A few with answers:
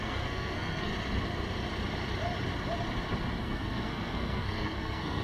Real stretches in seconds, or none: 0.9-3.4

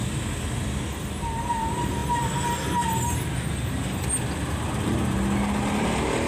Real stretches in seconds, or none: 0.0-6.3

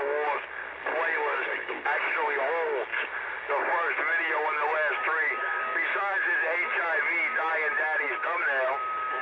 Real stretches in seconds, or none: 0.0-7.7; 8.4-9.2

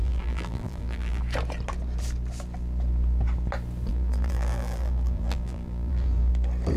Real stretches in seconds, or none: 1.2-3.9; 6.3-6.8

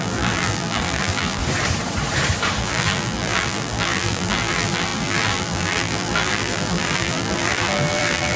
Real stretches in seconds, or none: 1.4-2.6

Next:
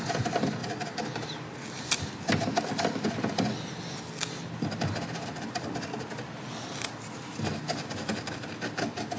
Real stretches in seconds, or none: 0.0-9.2

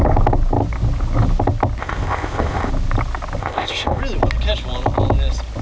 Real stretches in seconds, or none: 0.0-1.8; 2.7-3.4; 4.0-5.6